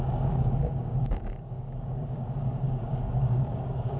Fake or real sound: fake